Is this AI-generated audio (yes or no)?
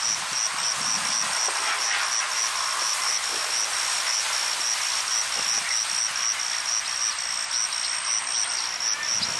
no